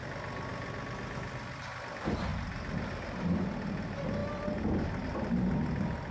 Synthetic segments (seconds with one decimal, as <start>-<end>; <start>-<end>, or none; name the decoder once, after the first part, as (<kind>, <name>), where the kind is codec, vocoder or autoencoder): none